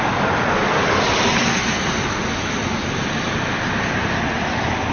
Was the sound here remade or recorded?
recorded